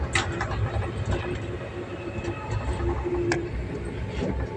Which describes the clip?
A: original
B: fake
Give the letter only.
A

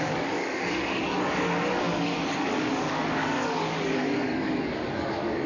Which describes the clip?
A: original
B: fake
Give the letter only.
B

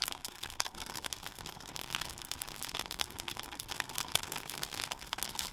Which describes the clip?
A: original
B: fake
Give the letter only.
B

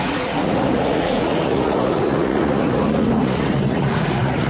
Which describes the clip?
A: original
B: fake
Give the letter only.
B